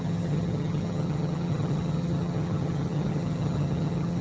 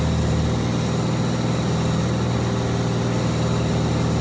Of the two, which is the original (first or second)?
second